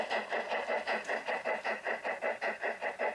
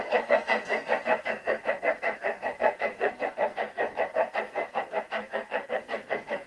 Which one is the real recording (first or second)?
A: first